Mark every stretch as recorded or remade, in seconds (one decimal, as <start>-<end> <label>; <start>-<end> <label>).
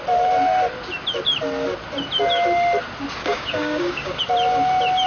0.0-3.2 recorded; 3.2-4.2 remade; 4.2-5.1 recorded